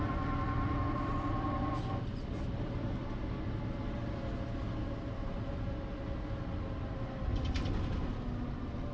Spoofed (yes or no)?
no